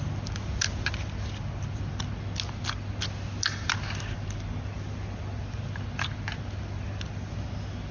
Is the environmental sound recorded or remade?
recorded